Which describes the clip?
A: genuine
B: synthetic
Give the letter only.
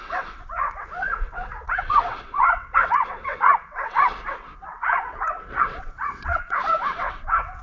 B